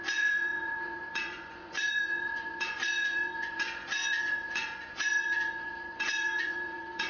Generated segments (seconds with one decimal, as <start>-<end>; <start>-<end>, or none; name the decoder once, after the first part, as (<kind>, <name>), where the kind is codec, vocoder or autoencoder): 0.0-7.1 (vocoder, Vocos)